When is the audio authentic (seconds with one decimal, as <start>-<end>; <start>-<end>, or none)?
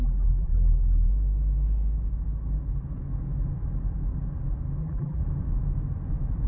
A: 1.1-4.8; 5.2-6.5